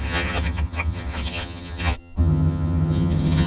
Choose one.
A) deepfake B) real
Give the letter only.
A